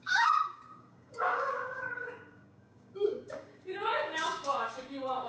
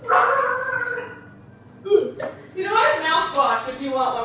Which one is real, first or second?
second